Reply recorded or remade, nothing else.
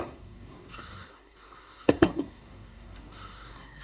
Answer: remade